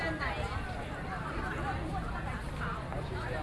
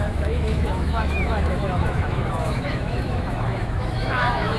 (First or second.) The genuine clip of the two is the first